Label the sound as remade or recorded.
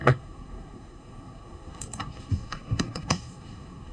remade